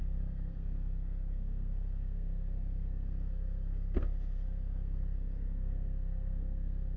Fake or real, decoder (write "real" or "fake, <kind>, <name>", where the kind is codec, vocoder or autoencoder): fake, codec, SNAC